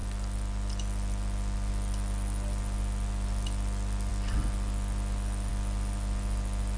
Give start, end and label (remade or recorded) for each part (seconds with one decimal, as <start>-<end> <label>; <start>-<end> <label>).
0.0-6.8 recorded